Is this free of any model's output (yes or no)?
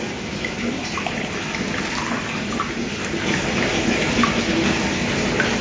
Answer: yes